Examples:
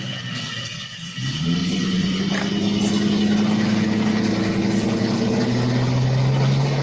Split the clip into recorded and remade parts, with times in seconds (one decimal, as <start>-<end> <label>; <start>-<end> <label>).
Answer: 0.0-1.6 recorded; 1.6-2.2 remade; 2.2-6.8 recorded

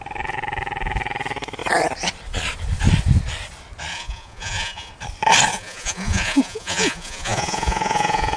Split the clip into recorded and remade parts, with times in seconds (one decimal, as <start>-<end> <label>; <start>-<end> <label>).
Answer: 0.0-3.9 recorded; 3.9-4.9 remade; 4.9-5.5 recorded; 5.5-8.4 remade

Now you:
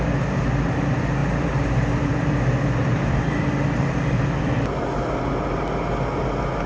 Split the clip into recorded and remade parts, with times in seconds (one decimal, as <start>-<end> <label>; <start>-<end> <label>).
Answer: 0.0-1.2 recorded; 1.2-5.2 remade; 5.2-6.7 recorded